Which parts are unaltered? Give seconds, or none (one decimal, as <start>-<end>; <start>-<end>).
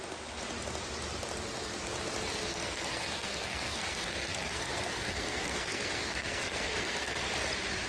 0.0-2.5; 7.2-7.9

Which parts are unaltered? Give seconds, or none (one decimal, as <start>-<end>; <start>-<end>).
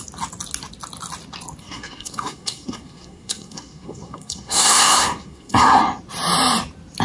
0.0-1.6; 5.8-7.0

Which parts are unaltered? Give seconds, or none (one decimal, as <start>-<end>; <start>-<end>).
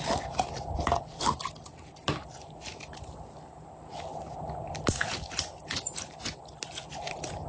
0.0-7.5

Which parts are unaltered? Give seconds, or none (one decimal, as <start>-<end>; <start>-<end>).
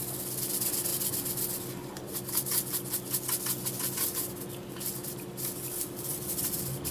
0.0-6.9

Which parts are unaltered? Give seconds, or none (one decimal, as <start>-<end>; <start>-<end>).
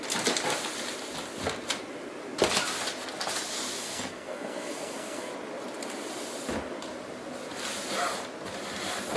0.0-3.8; 5.3-9.2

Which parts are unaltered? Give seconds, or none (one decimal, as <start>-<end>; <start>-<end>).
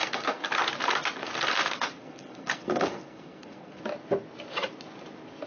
0.5-1.2; 3.8-5.5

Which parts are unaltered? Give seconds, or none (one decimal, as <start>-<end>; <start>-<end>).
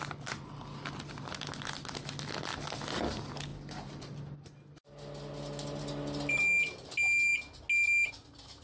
0.0-8.6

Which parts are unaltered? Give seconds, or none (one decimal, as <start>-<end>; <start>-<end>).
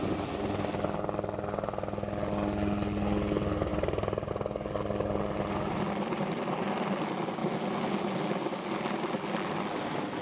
0.0-10.2